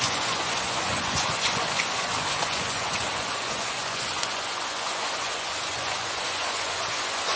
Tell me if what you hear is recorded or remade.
remade